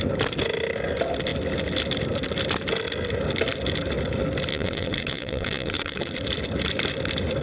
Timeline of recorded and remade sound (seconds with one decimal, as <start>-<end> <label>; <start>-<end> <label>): 0.0-4.5 recorded; 4.5-6.1 remade; 6.1-7.4 recorded